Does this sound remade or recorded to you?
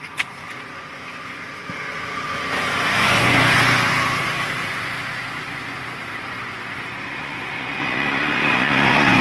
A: remade